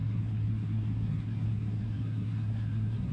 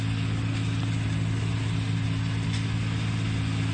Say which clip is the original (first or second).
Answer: second